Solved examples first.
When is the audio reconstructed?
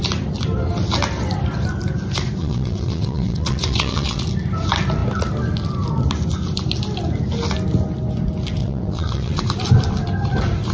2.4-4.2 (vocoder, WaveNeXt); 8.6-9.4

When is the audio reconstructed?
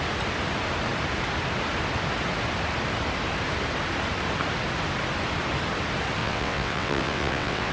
6.2-7.7 (vocoder, WaveNeXt)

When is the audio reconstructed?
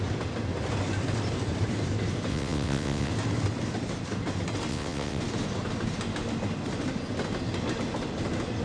2.3-3.1 (vocoder, WaveNeXt); 4.7-5.2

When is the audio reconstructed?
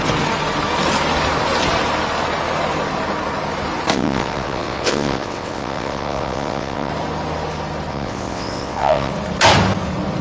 3.9-6.9 (vocoder, WaveNeXt); 7.9-9.1